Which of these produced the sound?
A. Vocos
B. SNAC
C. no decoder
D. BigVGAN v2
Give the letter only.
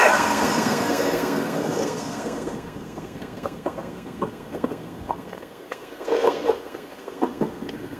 B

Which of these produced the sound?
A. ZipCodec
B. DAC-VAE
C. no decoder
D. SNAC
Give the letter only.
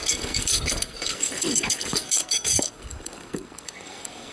D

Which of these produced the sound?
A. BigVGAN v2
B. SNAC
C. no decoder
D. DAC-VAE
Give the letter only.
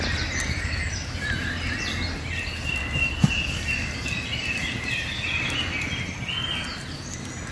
C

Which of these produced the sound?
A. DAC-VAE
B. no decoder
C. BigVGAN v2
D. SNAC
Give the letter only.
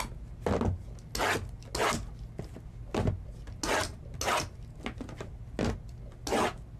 B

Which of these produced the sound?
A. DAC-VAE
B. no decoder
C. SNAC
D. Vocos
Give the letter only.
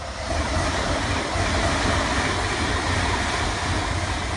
B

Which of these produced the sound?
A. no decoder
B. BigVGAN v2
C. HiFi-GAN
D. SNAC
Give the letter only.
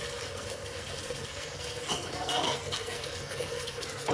D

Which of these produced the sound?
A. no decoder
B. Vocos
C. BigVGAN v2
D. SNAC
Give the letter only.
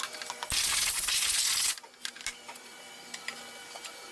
A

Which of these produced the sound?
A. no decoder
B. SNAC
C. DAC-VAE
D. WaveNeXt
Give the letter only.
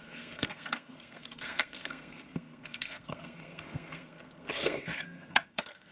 B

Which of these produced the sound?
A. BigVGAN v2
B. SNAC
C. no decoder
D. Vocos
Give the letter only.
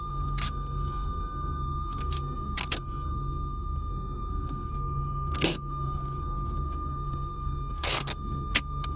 B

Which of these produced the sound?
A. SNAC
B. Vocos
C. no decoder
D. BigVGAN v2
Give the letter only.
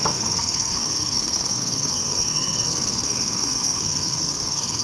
A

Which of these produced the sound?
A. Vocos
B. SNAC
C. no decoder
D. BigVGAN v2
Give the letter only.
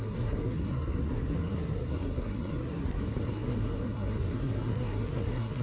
B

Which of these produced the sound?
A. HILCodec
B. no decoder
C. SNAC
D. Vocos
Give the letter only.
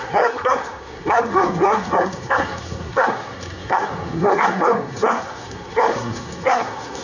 C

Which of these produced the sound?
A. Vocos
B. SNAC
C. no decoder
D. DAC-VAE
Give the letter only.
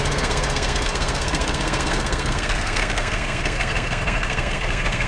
B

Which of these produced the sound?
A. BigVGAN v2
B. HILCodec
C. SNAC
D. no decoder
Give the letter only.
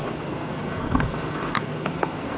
C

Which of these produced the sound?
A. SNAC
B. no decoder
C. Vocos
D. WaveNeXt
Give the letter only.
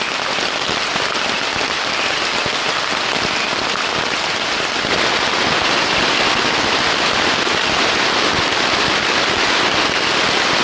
B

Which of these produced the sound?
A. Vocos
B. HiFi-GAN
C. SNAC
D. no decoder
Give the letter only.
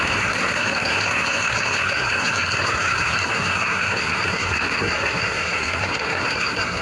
C